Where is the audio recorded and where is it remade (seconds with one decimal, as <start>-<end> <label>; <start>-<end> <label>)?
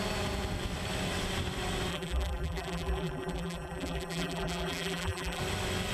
0.0-1.9 recorded; 1.9-5.4 remade; 5.4-5.9 recorded